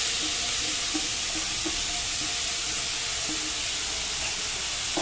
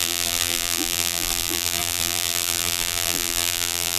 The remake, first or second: second